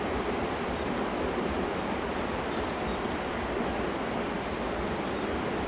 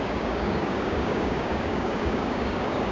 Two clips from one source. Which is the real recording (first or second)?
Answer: first